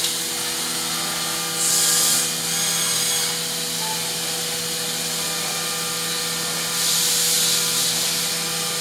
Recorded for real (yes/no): yes